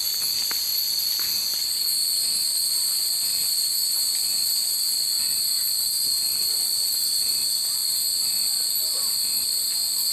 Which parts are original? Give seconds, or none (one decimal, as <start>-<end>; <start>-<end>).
0.0-10.1